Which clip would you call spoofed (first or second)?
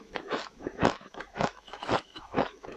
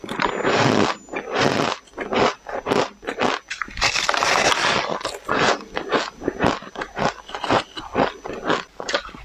first